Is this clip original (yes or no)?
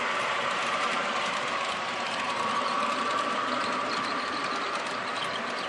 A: no